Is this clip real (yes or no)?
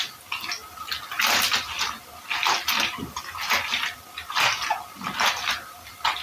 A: yes